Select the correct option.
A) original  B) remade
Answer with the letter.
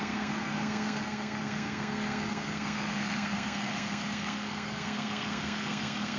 B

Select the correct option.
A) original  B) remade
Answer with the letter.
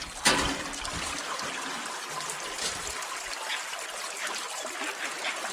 A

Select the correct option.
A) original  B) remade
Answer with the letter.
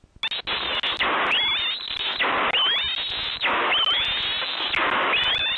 A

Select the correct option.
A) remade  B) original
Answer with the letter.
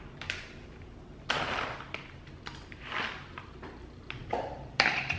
B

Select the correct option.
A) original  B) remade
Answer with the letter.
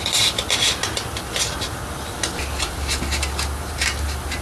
A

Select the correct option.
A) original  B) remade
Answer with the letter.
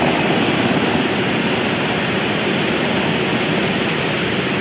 A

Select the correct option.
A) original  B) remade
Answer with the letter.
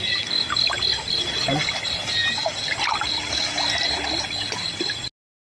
A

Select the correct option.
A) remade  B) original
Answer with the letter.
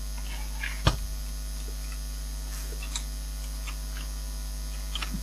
B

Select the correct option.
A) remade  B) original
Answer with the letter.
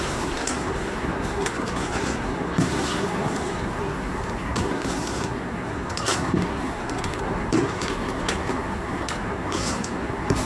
A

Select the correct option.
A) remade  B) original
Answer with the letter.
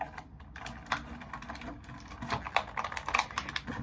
B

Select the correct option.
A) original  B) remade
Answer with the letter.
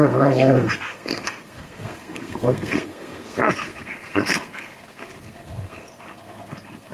B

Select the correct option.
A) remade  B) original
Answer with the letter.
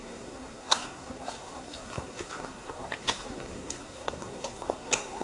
A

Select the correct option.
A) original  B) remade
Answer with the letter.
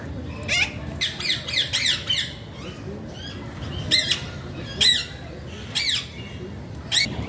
A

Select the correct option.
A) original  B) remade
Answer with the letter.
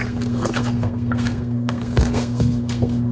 B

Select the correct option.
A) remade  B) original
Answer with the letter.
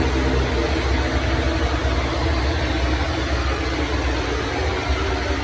B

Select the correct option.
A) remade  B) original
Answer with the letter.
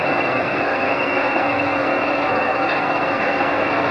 A